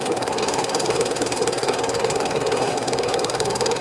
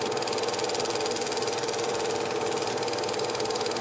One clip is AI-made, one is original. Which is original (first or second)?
second